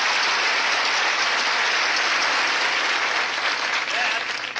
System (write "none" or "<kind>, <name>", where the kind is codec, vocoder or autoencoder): none